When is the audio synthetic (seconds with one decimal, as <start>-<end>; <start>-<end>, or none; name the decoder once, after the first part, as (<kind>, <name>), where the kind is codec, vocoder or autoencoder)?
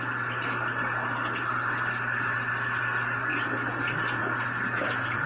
none